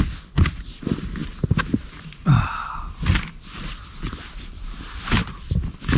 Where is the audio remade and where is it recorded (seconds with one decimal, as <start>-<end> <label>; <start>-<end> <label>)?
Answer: 0.0-6.0 recorded